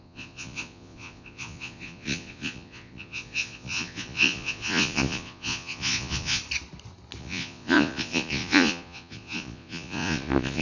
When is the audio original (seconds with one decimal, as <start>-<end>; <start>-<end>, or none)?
6.4-7.2